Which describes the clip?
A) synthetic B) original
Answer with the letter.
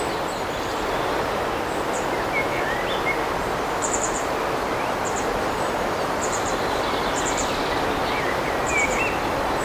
B